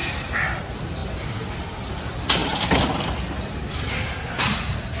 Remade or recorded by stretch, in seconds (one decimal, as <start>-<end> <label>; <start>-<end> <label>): 0.0-1.0 recorded; 1.0-1.9 remade; 1.9-2.4 recorded; 2.4-4.1 remade; 4.1-5.0 recorded